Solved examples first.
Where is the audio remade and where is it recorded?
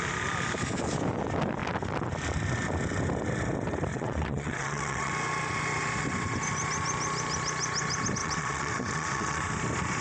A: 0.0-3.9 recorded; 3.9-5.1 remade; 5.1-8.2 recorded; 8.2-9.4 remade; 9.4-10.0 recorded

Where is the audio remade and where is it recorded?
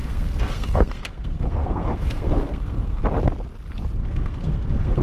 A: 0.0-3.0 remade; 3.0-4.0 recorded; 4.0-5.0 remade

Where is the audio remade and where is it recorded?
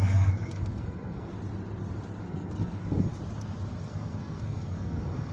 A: 0.0-1.3 remade; 1.3-2.2 recorded; 2.2-3.1 remade; 3.1-3.8 recorded; 3.8-5.3 remade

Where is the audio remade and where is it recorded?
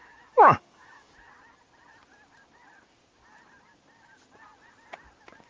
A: 0.0-1.1 remade; 1.1-5.5 recorded